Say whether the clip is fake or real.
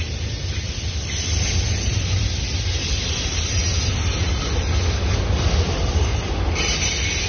real